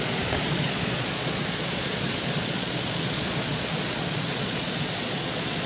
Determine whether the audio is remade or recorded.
remade